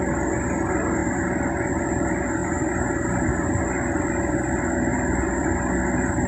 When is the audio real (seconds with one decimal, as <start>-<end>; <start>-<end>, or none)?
0.0-2.4; 3.5-4.9; 5.4-6.3